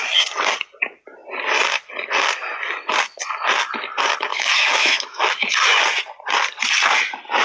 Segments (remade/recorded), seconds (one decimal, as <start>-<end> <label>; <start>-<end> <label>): 0.0-4.3 recorded; 4.3-5.5 remade; 5.5-7.4 recorded

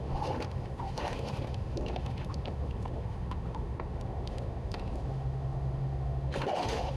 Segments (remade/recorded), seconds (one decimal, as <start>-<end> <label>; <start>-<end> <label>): 0.0-7.0 remade

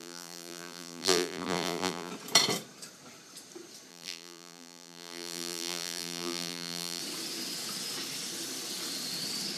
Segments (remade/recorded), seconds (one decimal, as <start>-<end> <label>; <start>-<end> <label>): 0.0-2.1 remade; 2.1-3.9 recorded; 3.9-7.0 remade; 7.0-9.6 recorded

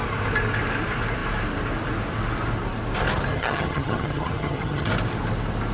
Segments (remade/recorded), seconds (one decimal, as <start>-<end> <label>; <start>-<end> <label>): 0.0-3.3 recorded; 3.3-4.9 remade; 4.9-5.7 recorded

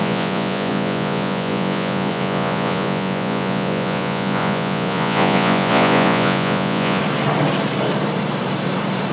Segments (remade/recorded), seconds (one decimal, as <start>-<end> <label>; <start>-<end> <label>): 0.0-7.0 remade; 7.0-9.1 recorded

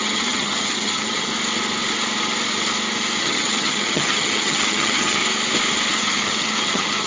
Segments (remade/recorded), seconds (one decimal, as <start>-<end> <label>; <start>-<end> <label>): 0.0-1.3 remade; 1.3-3.2 recorded; 3.2-5.2 remade; 5.2-5.9 recorded; 5.9-7.1 remade

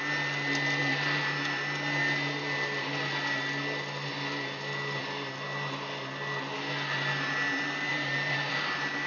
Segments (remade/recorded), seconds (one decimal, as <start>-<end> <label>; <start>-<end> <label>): 0.0-7.9 recorded; 7.9-8.5 remade; 8.5-9.1 recorded

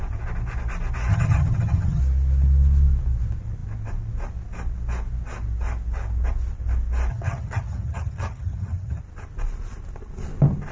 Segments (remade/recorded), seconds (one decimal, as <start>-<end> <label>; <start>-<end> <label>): 0.0-1.1 recorded; 1.1-2.0 remade; 2.0-7.1 recorded; 7.1-9.0 remade; 9.0-10.7 recorded